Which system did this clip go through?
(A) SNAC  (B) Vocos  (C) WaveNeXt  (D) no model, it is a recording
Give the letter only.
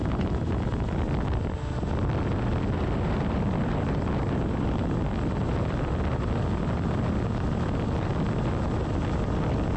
D